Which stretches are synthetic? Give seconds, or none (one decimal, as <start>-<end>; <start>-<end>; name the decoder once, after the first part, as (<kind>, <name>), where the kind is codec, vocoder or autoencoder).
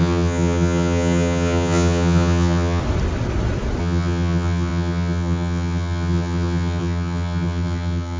0.0-2.8 (vocoder, HiFi-GAN); 3.8-8.2